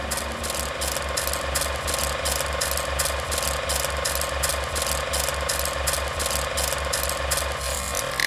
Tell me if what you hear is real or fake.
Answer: real